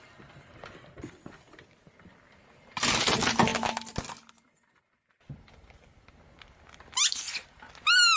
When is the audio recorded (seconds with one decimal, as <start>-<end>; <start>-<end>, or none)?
0.0-8.2